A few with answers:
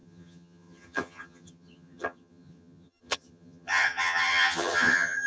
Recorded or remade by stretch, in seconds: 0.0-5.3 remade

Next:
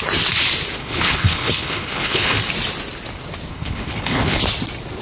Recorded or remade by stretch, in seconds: 0.0-0.8 recorded; 0.8-2.4 remade; 2.4-3.5 recorded; 3.5-4.4 remade; 4.4-5.0 recorded

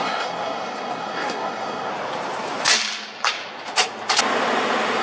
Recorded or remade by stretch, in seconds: 0.0-1.9 remade; 1.9-5.0 recorded

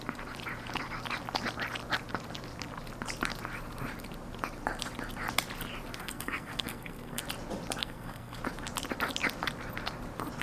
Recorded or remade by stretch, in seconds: 0.0-6.0 recorded; 6.0-7.2 remade; 7.2-7.8 recorded; 7.8-8.4 remade; 8.4-10.4 recorded

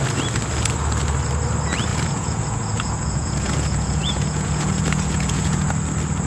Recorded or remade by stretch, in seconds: 0.0-1.9 recorded; 1.9-5.7 remade; 5.7-6.3 recorded